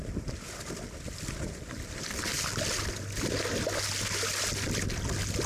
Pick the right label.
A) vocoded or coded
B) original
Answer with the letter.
B